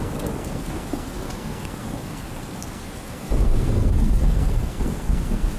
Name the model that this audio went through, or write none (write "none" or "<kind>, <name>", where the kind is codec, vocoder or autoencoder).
codec, SNAC